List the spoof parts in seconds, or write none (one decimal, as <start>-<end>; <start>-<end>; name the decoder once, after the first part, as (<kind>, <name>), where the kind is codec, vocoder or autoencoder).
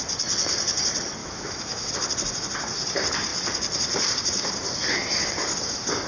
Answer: 1.2-1.9 (autoencoder, DAC-VAE)